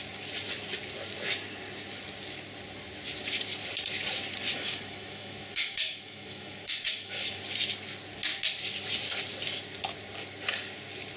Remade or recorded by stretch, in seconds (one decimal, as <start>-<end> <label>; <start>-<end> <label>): 0.0-4.5 recorded; 4.5-7.4 remade; 7.4-11.2 recorded